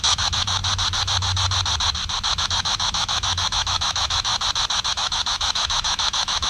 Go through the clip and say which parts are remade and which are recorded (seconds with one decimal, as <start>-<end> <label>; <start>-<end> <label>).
0.0-0.6 remade; 0.6-2.4 recorded; 2.4-4.3 remade; 4.3-4.9 recorded; 4.9-6.5 remade